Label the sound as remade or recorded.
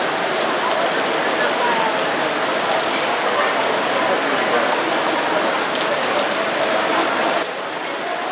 recorded